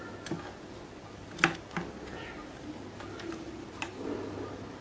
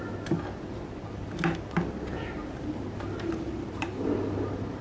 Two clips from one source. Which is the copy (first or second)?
second